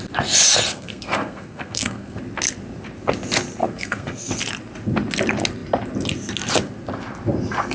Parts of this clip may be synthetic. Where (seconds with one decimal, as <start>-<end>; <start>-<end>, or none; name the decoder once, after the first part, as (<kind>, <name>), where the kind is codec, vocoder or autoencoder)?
0.7-2.2 (codec, SNAC); 3.6-4.4